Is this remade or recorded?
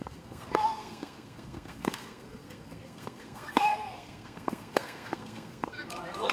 remade